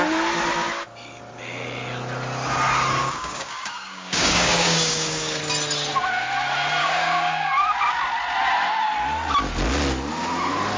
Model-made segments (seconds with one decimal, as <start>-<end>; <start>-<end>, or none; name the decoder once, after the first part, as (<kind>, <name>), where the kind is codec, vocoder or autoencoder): 3.0-5.4 (codec, DAC); 6.8-7.5